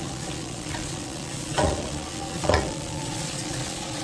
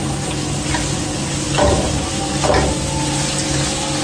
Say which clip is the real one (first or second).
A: second